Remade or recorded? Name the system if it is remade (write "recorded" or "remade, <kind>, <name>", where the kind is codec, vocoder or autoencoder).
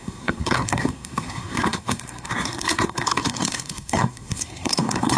remade, codec, SNAC